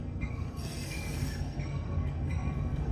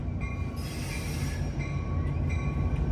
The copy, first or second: first